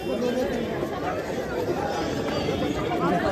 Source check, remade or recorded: remade